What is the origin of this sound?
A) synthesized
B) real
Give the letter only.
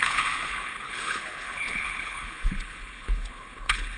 A